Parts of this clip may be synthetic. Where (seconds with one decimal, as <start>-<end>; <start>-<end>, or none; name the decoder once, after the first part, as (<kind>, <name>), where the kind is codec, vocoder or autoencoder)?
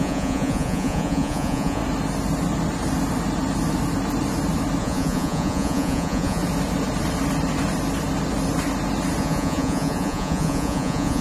0.0-1.8 (vocoder, Vocos); 4.8-6.4; 9.2-11.2